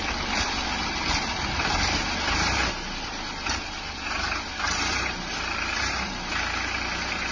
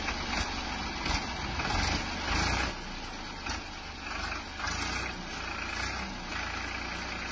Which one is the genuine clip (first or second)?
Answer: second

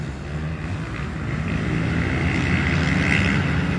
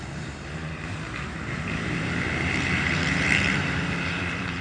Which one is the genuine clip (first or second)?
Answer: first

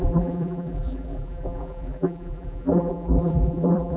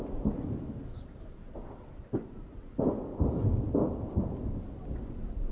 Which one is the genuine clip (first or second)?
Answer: second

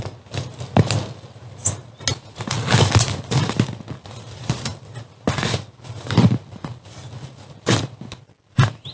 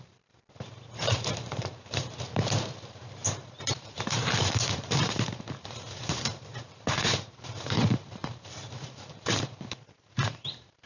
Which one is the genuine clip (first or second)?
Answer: first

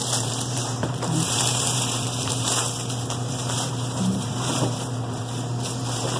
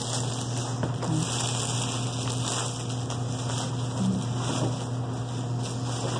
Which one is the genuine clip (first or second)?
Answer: second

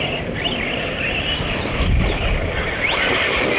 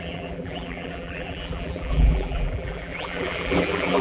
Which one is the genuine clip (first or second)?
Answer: first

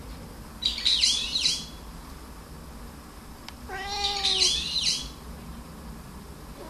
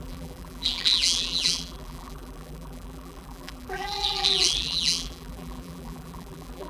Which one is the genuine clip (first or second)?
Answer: first